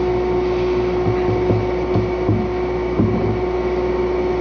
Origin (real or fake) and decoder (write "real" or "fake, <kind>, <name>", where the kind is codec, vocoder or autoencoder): real